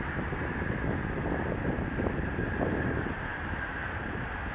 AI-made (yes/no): no